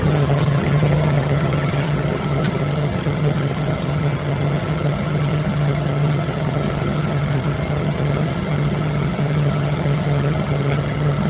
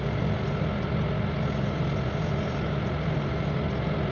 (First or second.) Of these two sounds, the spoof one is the first